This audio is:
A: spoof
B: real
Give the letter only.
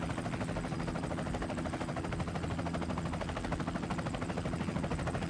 B